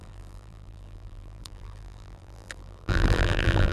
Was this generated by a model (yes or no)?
yes